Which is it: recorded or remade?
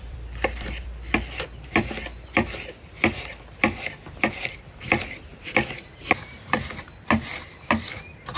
remade